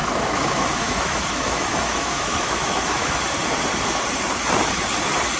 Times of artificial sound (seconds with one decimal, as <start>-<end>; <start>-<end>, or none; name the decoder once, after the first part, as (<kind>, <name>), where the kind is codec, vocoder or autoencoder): 0.0-3.2 (autoencoder, DAC-VAE)